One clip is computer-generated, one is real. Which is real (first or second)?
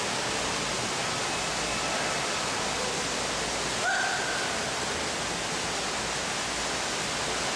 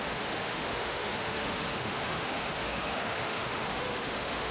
first